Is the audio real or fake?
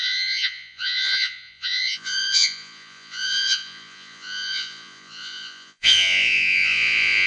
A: fake